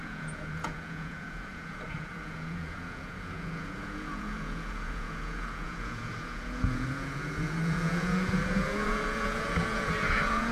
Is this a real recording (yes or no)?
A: no